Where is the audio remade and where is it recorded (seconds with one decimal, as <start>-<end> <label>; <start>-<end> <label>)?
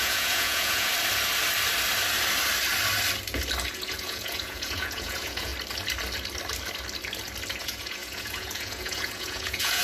0.0-0.9 remade; 0.9-3.7 recorded; 3.7-5.5 remade; 5.5-7.6 recorded; 7.6-9.8 remade